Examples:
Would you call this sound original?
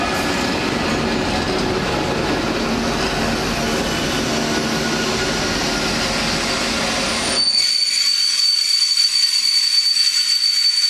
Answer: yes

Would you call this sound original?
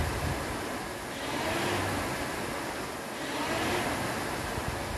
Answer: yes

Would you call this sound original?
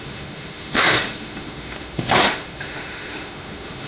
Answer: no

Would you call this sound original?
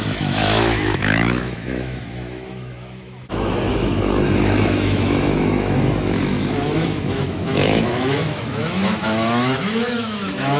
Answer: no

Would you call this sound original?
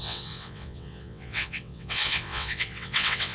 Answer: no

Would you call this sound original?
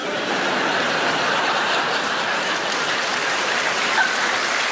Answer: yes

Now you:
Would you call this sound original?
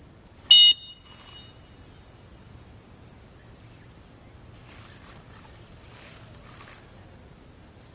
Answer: yes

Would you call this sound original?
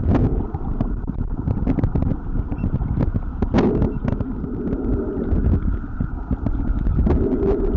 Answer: yes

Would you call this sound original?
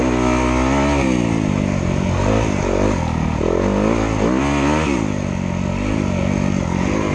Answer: yes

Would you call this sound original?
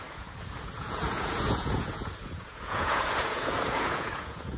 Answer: no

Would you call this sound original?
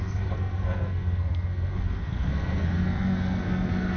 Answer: no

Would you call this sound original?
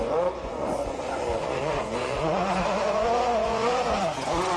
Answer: no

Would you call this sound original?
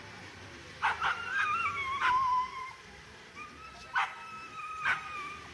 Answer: yes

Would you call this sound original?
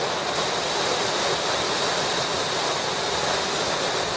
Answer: yes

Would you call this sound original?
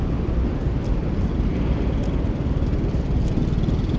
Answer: yes